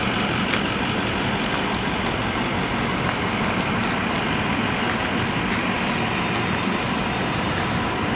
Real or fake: real